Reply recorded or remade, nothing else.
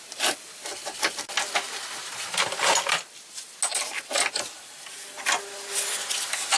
recorded